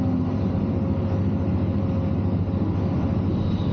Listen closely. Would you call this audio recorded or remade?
recorded